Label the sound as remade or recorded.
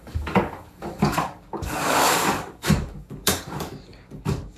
remade